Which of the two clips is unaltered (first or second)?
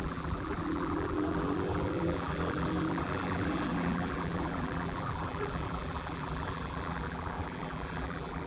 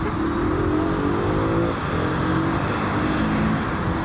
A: second